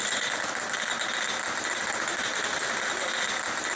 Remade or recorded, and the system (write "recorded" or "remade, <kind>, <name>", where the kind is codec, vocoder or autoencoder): recorded